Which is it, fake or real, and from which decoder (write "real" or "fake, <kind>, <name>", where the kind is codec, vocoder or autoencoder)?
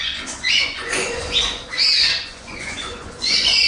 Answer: fake, vocoder, Vocos